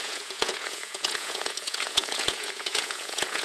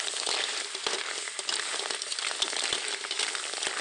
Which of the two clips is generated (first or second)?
first